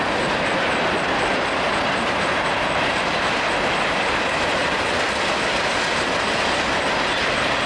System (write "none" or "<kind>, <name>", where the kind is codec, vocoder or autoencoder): none